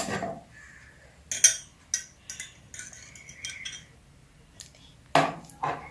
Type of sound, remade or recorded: recorded